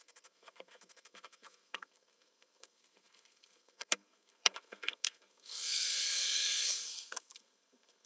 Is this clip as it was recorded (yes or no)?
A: no